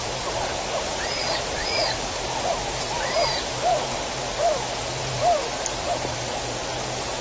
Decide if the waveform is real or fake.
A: fake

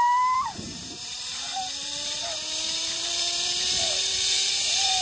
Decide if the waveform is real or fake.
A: fake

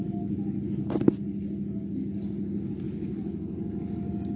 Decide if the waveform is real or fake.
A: real